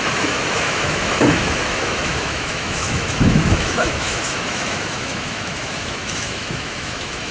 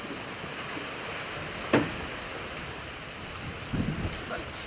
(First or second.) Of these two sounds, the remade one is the first